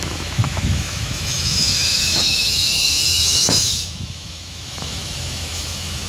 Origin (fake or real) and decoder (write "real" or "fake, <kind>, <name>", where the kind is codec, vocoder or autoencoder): fake, autoencoder, DAC-VAE